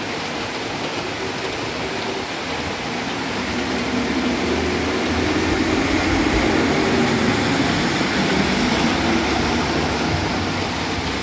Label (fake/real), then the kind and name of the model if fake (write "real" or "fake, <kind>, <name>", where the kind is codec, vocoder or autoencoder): real